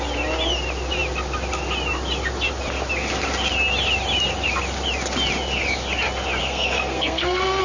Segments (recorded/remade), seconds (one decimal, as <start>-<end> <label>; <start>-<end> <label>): 0.0-6.4 recorded; 6.4-7.6 remade